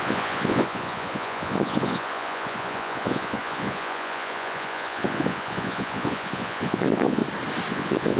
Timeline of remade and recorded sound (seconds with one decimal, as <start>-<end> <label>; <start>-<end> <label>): 0.0-7.2 remade; 7.2-7.7 recorded; 7.7-8.2 remade